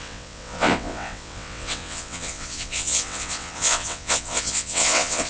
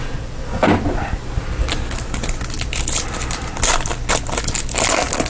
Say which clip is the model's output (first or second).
first